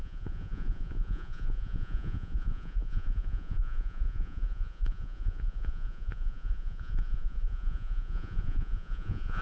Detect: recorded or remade remade